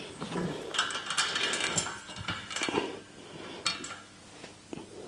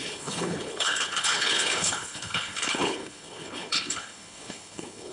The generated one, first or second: second